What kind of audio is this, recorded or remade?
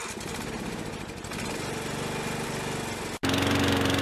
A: recorded